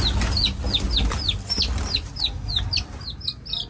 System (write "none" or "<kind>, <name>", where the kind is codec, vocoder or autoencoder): none